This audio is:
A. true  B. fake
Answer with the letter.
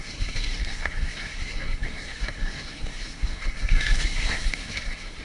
B